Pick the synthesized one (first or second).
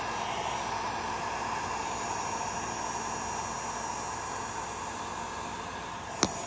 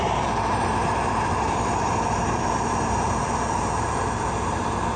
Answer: second